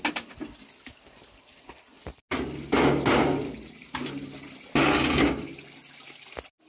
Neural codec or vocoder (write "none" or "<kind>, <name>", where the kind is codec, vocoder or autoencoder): none